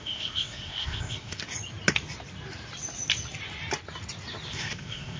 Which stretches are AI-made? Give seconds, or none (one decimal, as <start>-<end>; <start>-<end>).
0.0-1.4; 4.5-5.2